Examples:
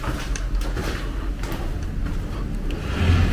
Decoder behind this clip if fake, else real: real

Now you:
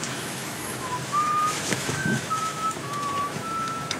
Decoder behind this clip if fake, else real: fake, autoencoder, DAC-VAE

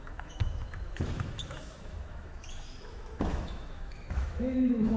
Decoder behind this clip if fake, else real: fake, autoencoder, DAC-VAE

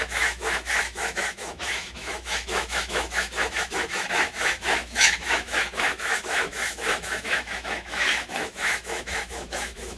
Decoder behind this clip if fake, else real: fake, autoencoder, DAC-VAE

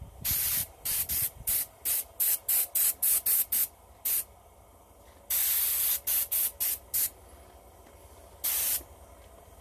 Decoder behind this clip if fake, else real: real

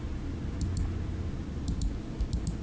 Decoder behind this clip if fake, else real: real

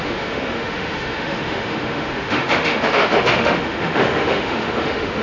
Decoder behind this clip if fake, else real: fake, autoencoder, DAC-VAE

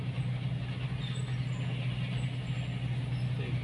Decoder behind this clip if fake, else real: real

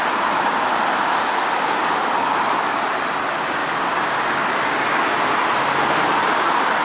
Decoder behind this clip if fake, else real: real